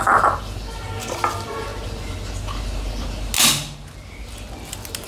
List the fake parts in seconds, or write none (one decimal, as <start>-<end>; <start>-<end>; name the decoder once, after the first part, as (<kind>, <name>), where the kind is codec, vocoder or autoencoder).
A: none